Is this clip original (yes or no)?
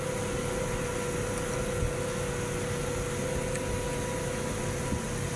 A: yes